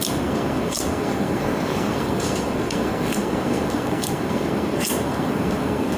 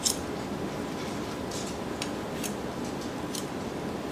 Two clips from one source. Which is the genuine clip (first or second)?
second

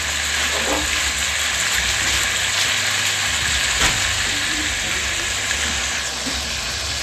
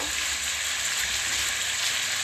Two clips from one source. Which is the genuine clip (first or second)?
first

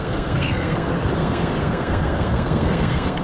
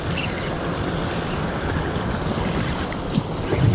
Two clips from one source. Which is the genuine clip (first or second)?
second